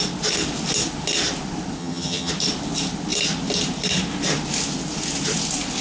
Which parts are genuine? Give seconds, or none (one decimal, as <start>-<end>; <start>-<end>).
0.0-1.8; 2.3-5.8